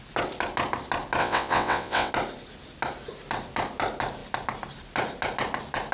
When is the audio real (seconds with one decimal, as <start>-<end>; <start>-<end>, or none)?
0.0-1.2; 2.1-5.9